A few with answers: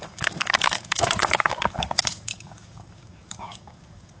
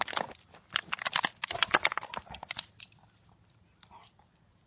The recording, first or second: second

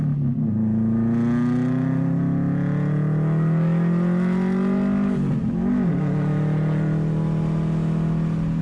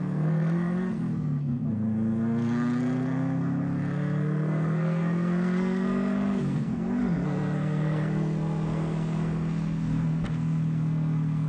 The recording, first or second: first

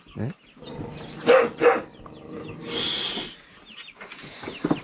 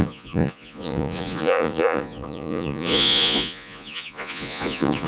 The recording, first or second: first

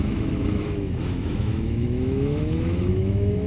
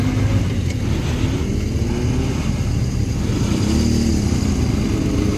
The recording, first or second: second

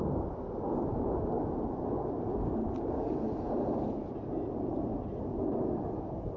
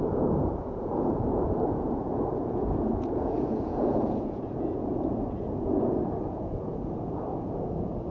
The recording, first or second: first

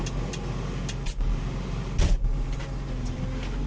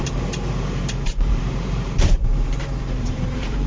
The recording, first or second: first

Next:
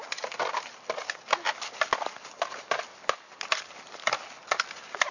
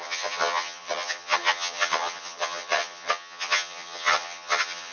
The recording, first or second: first